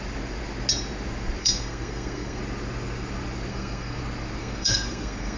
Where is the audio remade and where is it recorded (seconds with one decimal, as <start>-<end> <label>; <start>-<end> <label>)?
0.0-1.4 recorded; 1.4-2.4 remade; 2.4-3.5 recorded; 3.5-4.0 remade; 4.0-4.4 recorded; 4.4-5.4 remade